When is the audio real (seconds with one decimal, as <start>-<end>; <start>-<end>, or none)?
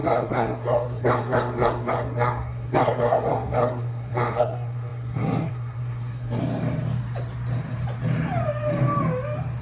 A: 6.4-9.6